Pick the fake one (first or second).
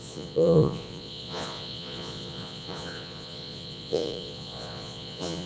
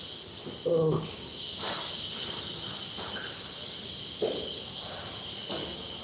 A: first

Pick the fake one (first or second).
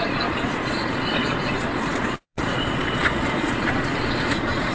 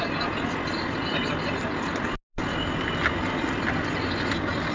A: first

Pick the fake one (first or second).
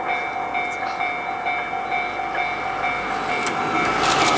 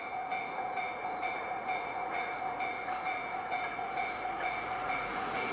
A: second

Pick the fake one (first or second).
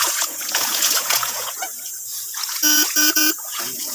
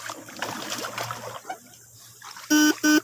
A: first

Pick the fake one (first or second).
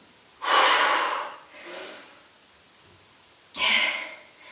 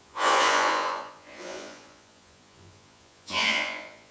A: second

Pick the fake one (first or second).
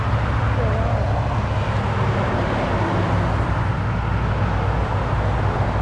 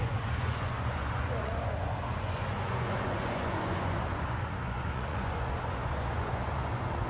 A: second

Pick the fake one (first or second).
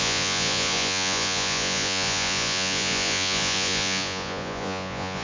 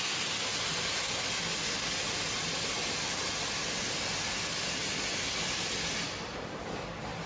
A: first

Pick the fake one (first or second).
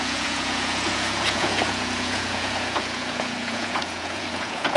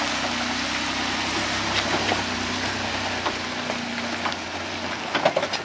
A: first